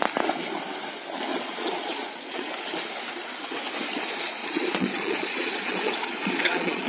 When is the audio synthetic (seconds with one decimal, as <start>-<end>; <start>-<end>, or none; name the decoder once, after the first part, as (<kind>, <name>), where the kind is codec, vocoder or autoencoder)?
1.3-2.5 (vocoder, Vocos); 4.4-6.9